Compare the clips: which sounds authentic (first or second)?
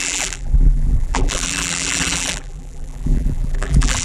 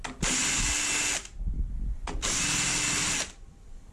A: second